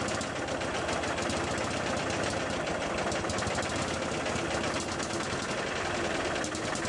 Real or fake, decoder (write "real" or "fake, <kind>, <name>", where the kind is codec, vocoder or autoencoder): real